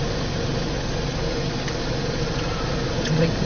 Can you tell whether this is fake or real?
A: real